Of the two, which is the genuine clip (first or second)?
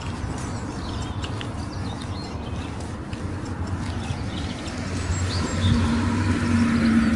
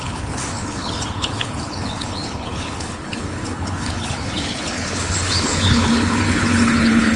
first